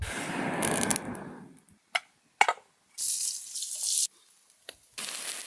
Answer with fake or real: real